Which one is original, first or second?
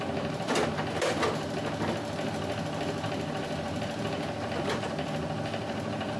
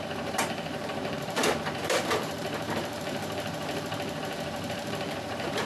first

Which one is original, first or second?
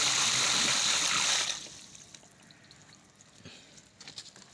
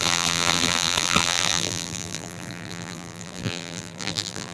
first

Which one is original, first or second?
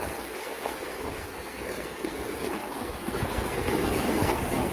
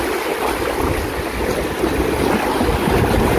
second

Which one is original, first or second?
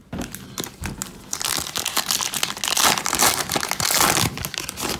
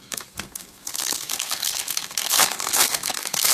first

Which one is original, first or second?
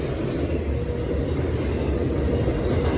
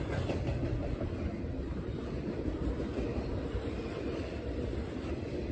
first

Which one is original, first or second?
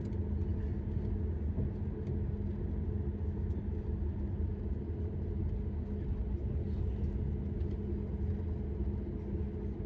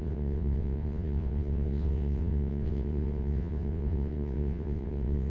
first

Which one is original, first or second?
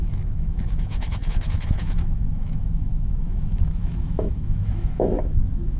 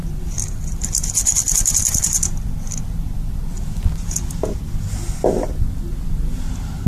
second